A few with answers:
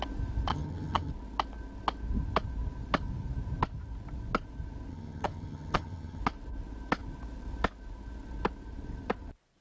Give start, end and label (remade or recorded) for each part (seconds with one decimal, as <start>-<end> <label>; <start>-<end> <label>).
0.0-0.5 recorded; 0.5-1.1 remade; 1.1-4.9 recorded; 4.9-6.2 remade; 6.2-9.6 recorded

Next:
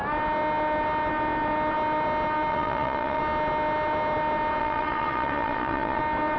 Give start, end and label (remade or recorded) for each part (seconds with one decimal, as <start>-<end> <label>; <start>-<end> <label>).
0.0-2.5 recorded; 2.5-3.2 remade; 3.2-4.6 recorded; 4.6-6.0 remade; 6.0-6.4 recorded

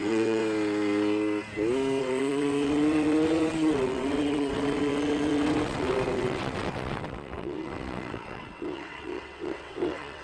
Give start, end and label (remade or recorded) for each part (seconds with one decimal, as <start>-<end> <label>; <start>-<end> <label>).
0.0-0.4 remade; 0.4-2.0 recorded; 2.0-10.2 remade

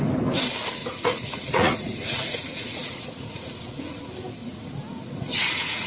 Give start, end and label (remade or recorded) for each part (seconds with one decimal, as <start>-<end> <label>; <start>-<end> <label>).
0.0-0.8 recorded; 0.8-4.0 remade; 4.0-4.4 recorded; 4.4-5.9 remade